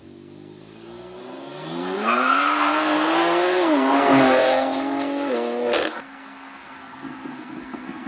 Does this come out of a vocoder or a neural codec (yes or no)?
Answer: yes